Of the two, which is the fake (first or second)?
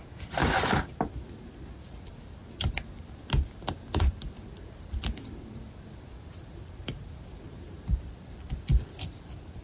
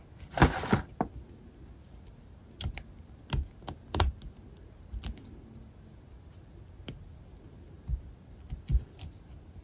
first